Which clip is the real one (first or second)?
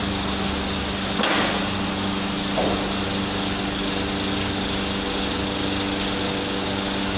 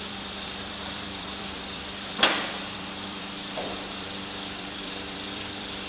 first